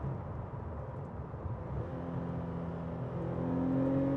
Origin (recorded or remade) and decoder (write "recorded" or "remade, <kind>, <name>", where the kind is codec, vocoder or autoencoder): recorded